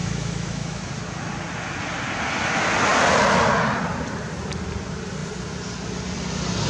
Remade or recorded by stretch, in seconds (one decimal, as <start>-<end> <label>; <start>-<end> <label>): 0.0-0.9 remade; 0.9-6.7 recorded